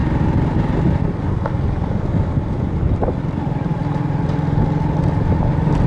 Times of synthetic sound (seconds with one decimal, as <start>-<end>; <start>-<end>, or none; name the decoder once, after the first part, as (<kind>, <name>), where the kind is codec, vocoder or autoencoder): none